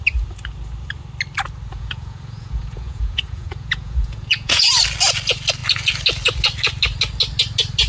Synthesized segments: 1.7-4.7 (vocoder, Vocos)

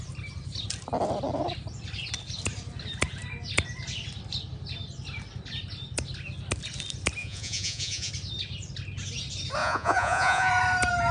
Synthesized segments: 7.2-8.1 (vocoder, Vocos); 9.6-10.5

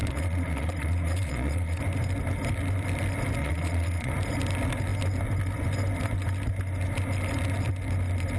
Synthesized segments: 0.0-1.8 (vocoder, Vocos); 3.4-4.1

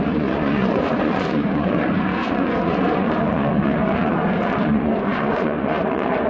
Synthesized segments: 0.0-6.3 (vocoder, Vocos)